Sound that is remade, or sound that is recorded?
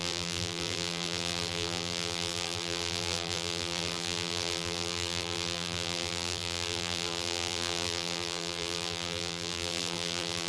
remade